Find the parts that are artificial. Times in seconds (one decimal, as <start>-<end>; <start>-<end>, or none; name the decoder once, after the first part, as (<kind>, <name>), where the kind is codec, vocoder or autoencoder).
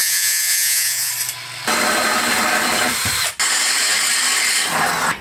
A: 0.0-1.1 (vocoder, Vocos)